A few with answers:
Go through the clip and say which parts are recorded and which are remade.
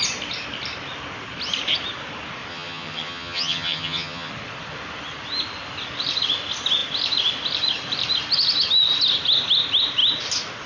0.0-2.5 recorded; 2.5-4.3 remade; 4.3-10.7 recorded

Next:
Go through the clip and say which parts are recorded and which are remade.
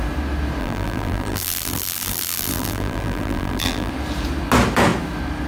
0.0-0.6 recorded; 0.6-3.9 remade; 3.9-5.5 recorded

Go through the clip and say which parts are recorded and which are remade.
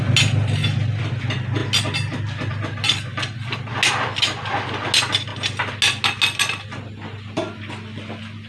0.0-8.5 recorded